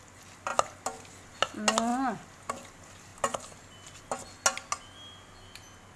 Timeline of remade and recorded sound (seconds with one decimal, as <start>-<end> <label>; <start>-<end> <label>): 0.0-6.0 recorded